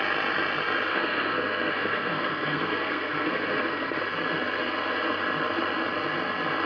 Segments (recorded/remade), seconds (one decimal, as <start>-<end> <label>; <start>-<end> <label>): 0.0-0.9 recorded; 0.9-4.0 remade; 4.0-6.7 recorded